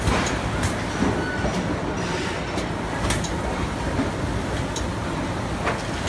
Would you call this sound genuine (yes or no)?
yes